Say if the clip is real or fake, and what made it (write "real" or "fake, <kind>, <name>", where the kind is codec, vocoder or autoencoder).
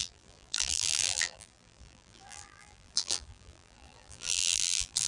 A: fake, vocoder, BigVGAN v2